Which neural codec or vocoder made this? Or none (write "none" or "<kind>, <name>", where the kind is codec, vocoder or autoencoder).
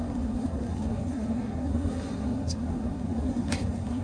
codec, SNAC